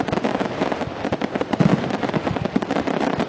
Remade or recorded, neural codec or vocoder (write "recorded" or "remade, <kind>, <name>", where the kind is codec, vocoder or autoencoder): recorded